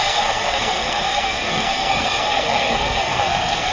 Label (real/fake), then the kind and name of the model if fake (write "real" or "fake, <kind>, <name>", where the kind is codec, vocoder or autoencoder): fake, codec, SNAC